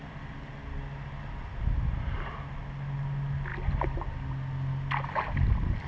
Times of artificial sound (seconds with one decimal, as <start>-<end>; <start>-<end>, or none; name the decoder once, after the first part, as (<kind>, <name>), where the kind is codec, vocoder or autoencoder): none